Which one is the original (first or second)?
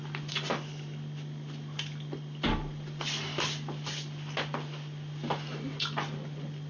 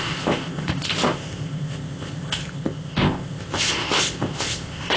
first